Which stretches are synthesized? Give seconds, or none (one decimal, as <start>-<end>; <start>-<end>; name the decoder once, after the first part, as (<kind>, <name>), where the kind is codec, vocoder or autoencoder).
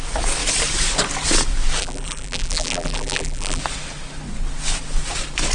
1.8-3.6 (vocoder, BigVGAN v2)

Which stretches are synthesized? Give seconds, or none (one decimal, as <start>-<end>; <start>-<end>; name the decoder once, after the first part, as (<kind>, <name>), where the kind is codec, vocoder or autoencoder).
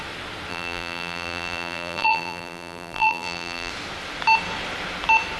0.5-3.7 (vocoder, BigVGAN v2)